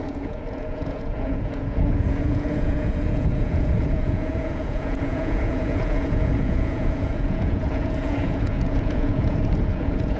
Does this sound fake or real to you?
fake